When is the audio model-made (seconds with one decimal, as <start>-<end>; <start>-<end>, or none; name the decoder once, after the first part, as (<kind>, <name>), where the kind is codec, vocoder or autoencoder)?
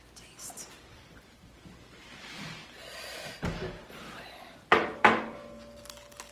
0.9-4.7 (vocoder, BigVGAN v2)